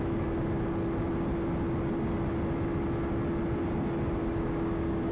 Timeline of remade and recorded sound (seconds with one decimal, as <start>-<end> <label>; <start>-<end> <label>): 0.0-4.2 recorded; 4.2-5.1 remade